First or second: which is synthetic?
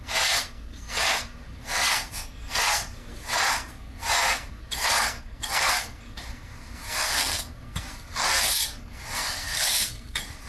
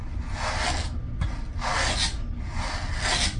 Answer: first